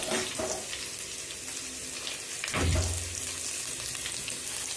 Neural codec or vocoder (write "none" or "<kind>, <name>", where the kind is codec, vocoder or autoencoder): none